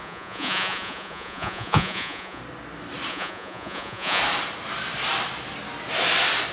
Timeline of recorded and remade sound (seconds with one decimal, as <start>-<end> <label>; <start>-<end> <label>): 0.0-2.4 remade; 2.4-3.1 recorded; 3.1-4.2 remade; 4.2-6.5 recorded